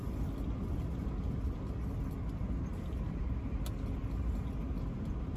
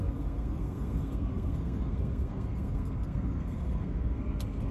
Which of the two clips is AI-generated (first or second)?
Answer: second